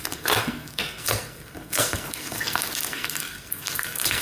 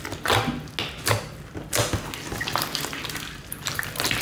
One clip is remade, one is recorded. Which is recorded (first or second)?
second